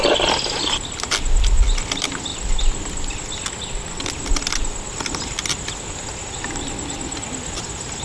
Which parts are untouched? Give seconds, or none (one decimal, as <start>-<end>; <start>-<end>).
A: 0.0-8.0